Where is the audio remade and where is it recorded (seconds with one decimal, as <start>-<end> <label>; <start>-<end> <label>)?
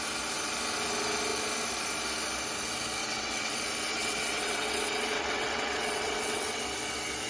0.0-3.0 recorded; 3.0-3.5 remade; 3.5-3.9 recorded; 3.9-6.6 remade; 6.6-7.3 recorded